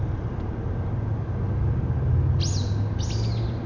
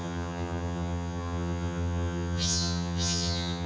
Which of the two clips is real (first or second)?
first